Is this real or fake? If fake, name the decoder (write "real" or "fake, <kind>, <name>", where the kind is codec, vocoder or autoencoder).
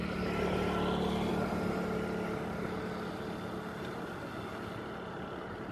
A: real